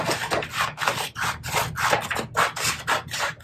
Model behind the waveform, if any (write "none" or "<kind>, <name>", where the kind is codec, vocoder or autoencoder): none